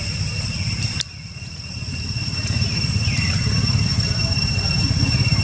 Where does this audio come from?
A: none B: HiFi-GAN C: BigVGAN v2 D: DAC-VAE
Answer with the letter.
C